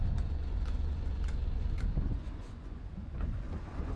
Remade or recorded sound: remade